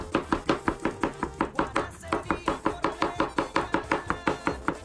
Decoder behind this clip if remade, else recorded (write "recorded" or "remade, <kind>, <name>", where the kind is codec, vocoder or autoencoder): recorded